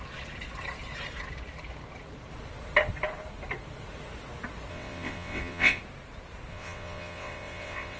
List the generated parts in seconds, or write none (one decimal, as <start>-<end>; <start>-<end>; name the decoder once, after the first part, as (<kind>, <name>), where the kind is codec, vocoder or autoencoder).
4.7-5.8 (vocoder, WaveNeXt); 6.5-8.0